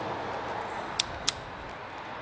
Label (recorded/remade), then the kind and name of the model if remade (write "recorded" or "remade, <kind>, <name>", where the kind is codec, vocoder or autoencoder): recorded